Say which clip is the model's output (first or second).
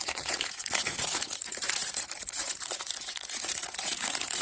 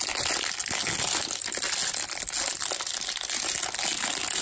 first